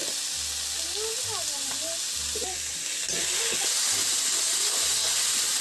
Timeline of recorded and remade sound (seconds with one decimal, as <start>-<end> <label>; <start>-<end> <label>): 0.0-5.6 recorded

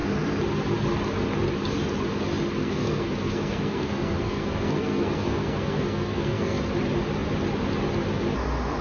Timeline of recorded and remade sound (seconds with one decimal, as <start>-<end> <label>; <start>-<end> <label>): 0.0-2.6 recorded; 2.6-6.6 remade; 6.6-8.8 recorded

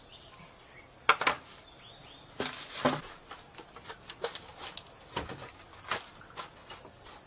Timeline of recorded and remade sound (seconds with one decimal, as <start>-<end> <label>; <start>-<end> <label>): 0.0-7.3 recorded

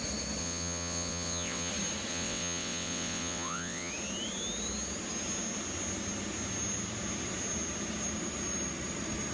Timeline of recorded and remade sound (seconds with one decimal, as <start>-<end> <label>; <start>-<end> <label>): 0.0-0.4 recorded; 0.4-1.7 remade; 1.7-2.1 recorded; 2.1-3.9 remade; 3.9-9.3 recorded

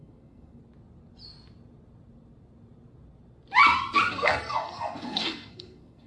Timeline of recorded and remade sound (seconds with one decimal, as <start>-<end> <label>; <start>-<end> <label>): 0.0-0.6 remade; 0.6-4.1 recorded; 4.1-6.1 remade